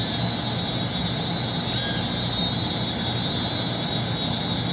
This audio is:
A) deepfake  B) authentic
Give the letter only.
B